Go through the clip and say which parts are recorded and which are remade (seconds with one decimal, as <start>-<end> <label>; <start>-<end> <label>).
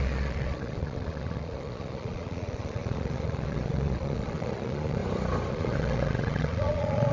0.0-5.0 remade; 5.0-5.5 recorded; 5.5-7.1 remade